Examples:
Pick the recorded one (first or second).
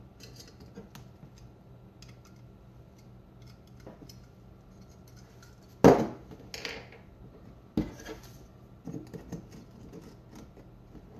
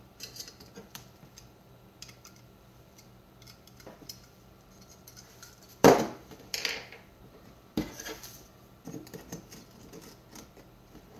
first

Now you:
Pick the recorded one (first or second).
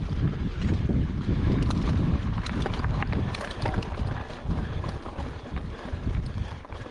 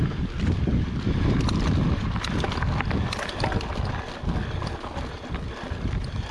second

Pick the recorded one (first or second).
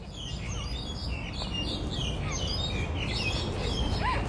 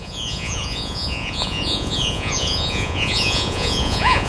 first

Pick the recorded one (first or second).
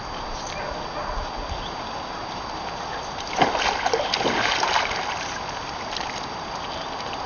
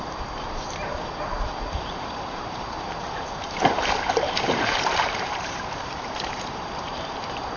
first